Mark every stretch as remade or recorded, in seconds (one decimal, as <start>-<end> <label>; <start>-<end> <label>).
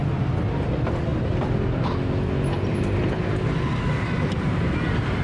0.0-5.2 recorded